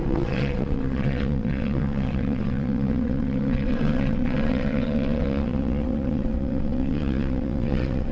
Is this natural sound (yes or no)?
no